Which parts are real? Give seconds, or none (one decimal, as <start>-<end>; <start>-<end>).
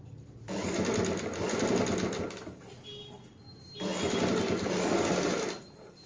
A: 0.0-6.1